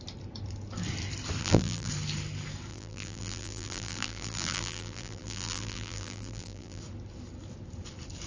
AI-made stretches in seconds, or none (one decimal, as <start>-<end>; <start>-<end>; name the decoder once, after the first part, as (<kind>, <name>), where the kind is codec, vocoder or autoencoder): 1.4-1.9 (vocoder, BigVGAN v2); 2.7-6.8